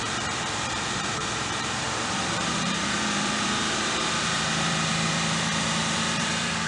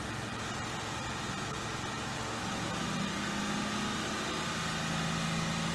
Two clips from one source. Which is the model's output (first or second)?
first